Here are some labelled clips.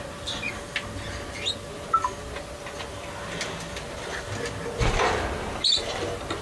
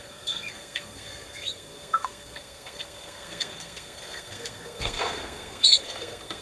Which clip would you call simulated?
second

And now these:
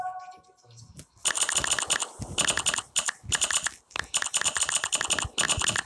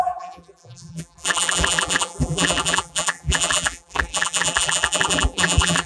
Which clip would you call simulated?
second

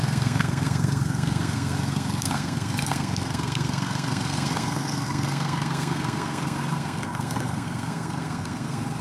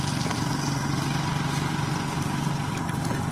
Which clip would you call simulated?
first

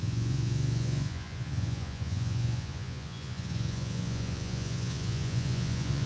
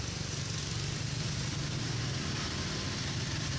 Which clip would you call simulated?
first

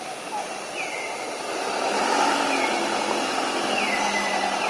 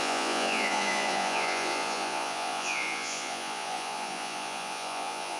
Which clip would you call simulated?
second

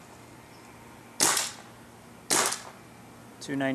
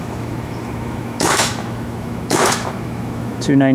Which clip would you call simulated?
second